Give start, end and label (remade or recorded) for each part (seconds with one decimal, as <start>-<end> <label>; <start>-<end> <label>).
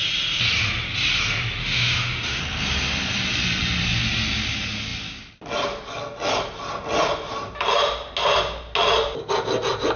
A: 0.0-1.6 recorded; 1.6-2.4 remade; 2.4-10.0 recorded